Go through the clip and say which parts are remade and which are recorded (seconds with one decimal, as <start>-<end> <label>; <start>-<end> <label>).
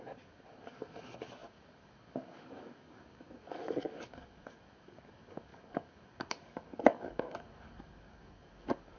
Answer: 0.0-9.0 remade